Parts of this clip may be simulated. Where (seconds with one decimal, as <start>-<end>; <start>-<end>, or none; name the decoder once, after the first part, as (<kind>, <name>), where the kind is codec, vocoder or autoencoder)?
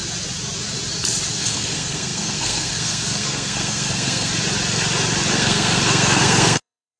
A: 1.4-4.3 (codec, SNAC); 5.3-7.0